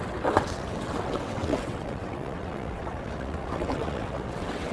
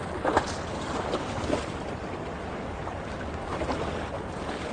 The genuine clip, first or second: second